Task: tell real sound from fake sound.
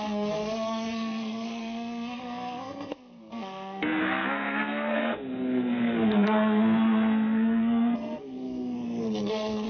fake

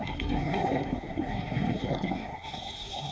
fake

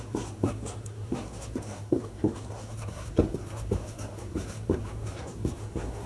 fake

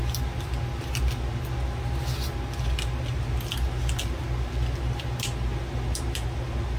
real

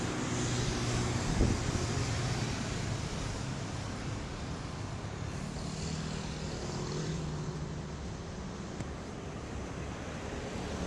real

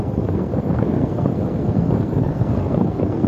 fake